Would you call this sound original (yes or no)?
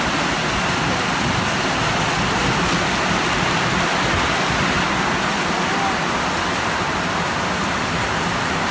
yes